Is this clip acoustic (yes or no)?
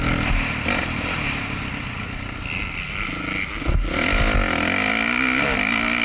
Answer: yes